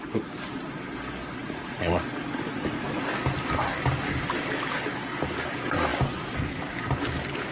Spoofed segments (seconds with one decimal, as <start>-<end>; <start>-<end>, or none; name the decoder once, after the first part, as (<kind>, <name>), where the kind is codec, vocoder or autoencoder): 1.4-3.1 (vocoder, Vocos)